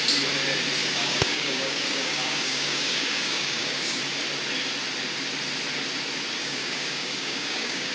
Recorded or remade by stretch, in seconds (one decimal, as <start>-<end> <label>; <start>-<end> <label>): 0.0-0.8 recorded; 0.8-4.0 remade; 4.0-6.4 recorded; 6.4-7.9 remade